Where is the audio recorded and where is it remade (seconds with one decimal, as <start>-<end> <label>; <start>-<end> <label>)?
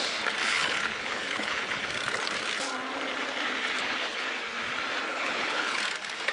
0.0-0.4 recorded; 0.4-1.9 remade; 1.9-3.8 recorded; 3.8-4.3 remade; 4.3-5.1 recorded; 5.1-5.8 remade; 5.8-6.3 recorded